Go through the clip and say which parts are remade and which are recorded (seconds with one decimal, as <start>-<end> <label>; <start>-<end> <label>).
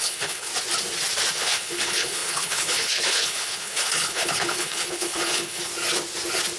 0.0-0.5 remade; 0.5-1.3 recorded; 1.3-5.7 remade; 5.7-6.6 recorded